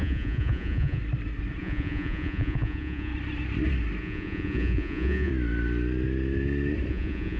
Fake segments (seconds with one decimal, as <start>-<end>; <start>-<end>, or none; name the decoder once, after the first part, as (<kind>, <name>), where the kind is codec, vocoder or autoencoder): 0.0-1.0 (vocoder, Vocos); 1.6-3.1; 4.0-5.3; 6.9-7.4